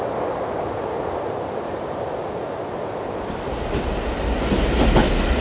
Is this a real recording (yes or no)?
yes